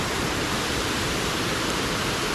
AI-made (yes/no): yes